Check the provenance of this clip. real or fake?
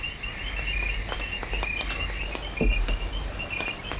real